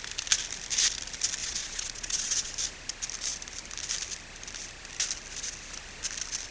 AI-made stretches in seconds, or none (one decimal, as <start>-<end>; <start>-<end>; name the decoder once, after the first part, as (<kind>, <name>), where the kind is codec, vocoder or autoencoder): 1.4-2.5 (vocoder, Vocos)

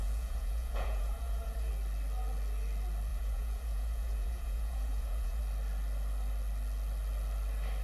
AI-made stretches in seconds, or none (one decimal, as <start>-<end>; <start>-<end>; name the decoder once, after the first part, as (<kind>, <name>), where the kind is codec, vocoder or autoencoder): 0.0-1.7 (vocoder, Vocos); 3.1-5.4

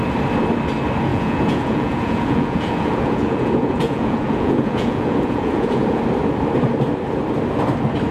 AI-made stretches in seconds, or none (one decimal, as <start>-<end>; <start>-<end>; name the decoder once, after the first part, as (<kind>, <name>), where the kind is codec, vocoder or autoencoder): 1.1-6.0 (vocoder, Vocos)

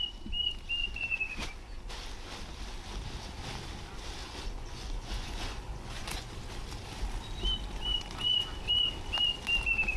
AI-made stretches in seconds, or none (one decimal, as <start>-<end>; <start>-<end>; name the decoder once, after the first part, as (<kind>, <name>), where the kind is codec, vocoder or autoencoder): 0.8-1.9 (vocoder, Vocos); 4.2-6.3